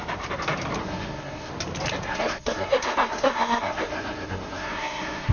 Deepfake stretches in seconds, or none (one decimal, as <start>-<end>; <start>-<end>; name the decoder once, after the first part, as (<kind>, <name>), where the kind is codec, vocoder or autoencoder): 0.8-1.5 (codec, SNAC); 2.1-5.3